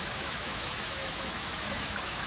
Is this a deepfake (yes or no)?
yes